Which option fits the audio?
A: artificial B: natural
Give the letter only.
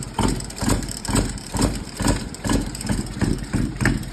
A